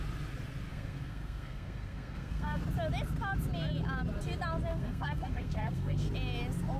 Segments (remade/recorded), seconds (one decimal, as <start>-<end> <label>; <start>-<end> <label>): 0.0-0.7 recorded; 0.7-2.6 remade; 2.6-4.7 recorded; 4.7-6.1 remade; 6.1-6.8 recorded